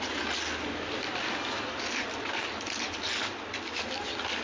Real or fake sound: real